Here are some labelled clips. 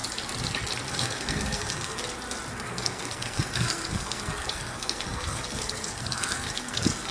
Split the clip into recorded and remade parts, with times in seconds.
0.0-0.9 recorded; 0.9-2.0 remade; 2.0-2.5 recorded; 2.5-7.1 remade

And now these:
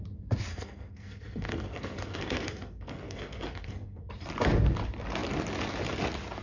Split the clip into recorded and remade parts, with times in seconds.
0.0-0.5 recorded; 0.5-4.1 remade; 4.1-6.4 recorded